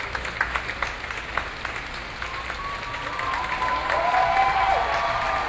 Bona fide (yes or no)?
yes